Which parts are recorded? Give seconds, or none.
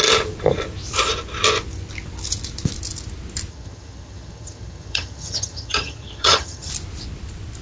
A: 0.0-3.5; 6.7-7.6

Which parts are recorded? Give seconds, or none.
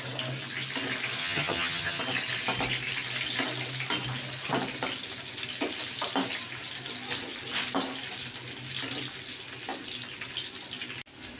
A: 0.0-1.2; 2.0-11.4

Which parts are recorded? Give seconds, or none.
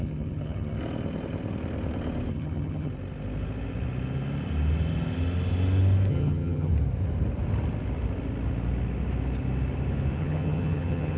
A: 0.8-2.3; 2.9-6.1; 6.7-10.2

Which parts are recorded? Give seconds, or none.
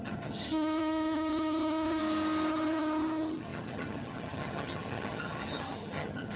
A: 2.0-2.5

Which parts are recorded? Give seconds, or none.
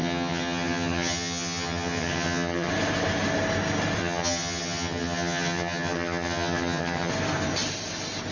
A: 2.7-4.0; 7.1-8.3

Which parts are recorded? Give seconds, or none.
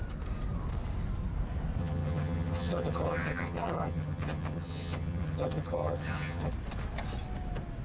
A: 0.0-1.8; 6.5-7.8